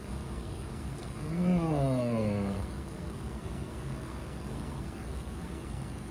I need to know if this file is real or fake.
fake